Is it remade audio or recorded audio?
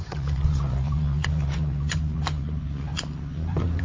remade